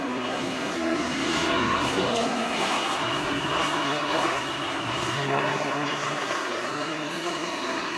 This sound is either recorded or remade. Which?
remade